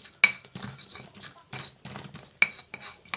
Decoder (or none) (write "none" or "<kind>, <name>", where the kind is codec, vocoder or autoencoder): none